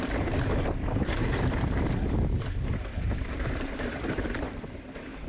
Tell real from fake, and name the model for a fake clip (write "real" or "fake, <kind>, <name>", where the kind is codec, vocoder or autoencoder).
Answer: fake, vocoder, BigVGAN v2